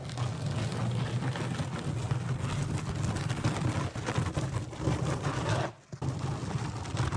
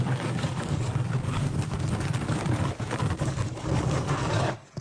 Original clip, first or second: first